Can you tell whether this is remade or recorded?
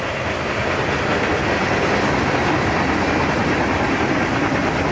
recorded